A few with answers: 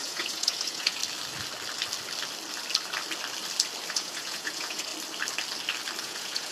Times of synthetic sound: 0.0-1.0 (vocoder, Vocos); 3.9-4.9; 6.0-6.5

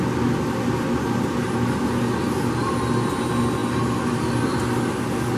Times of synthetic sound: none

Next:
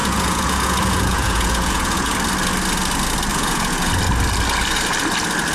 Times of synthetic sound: 0.0-2.1 (vocoder, Vocos); 3.3-3.9